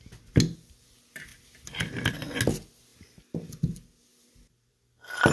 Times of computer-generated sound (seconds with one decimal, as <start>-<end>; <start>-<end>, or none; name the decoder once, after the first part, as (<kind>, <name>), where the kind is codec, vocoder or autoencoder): none